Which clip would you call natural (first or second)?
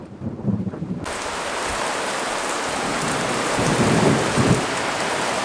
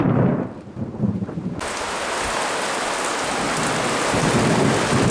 second